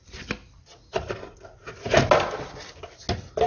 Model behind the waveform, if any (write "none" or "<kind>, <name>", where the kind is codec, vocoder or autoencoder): none